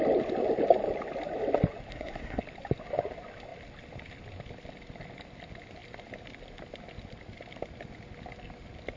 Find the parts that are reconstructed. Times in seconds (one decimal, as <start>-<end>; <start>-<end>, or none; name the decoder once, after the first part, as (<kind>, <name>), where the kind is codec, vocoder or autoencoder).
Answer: 1.9-2.4 (codec, SNAC)